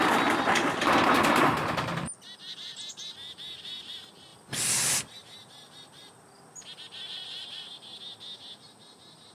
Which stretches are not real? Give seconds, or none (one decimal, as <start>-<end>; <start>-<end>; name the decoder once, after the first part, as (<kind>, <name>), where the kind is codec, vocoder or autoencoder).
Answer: 4.3-8.0 (vocoder, BigVGAN v2)